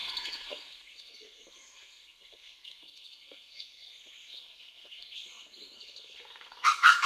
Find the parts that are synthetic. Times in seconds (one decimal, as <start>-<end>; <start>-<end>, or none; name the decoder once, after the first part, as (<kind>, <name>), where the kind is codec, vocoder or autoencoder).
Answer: 0.0-7.1 (codec, SNAC)